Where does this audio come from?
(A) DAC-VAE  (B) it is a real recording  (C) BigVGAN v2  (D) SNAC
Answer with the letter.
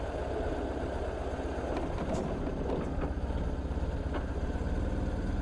B